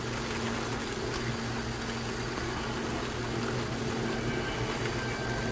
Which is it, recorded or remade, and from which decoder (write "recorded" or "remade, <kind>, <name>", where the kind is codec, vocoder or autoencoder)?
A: recorded